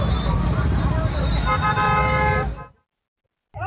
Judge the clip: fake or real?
real